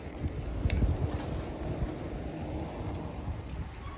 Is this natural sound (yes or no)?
yes